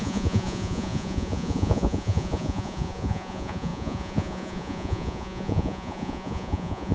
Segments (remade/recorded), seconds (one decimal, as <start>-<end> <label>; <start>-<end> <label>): 0.0-6.9 remade